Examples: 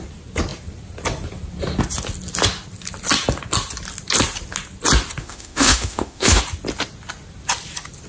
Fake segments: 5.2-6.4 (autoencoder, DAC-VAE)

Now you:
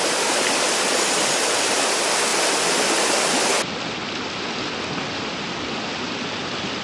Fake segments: none

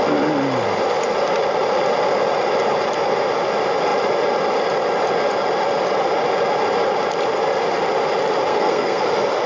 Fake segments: 8.5-9.0 (codec, SNAC)

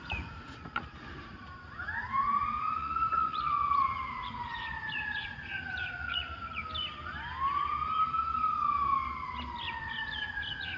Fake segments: 0.0-6.6 (vocoder, Vocos); 9.8-10.8

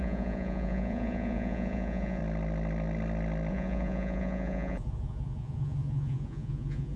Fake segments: 0.0-2.2 (vocoder, Vocos); 3.5-7.0

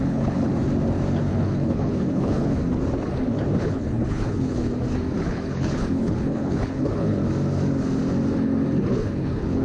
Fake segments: 0.0-0.5 (codec, HILCodec); 1.3-2.6; 3.6-4.7; 5.2-7.2; 8.9-9.6